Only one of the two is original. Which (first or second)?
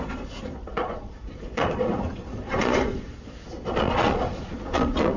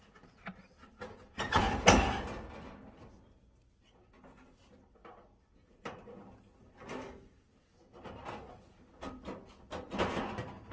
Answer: second